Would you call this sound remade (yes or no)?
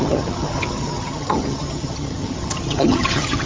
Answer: yes